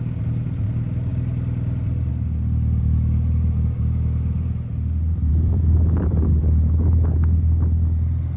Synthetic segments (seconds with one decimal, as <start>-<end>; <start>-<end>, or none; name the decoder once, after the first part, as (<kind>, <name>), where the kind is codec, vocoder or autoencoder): 5.3-6.3 (vocoder, BigVGAN v2)